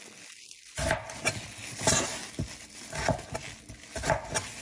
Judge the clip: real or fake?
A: real